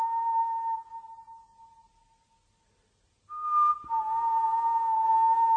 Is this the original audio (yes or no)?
yes